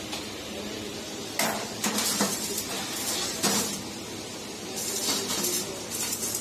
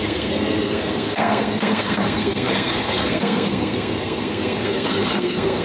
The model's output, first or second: second